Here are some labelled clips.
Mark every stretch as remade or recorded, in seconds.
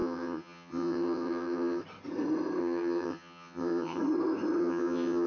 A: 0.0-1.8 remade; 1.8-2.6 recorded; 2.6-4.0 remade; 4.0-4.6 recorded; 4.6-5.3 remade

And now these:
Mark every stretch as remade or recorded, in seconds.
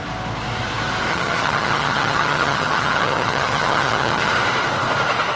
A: 0.0-1.1 recorded; 1.1-4.3 remade; 4.3-5.4 recorded